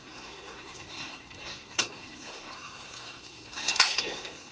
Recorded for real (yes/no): no